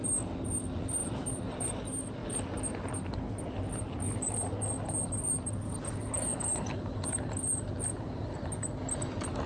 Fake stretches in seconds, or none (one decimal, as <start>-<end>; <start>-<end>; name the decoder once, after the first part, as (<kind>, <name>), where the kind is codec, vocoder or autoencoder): 1.0-1.7 (vocoder, BigVGAN v2)